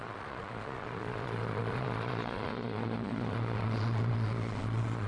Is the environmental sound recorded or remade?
remade